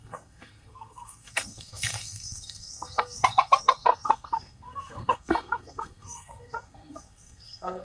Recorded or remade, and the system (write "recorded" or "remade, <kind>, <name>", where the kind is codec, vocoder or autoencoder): remade, codec, SNAC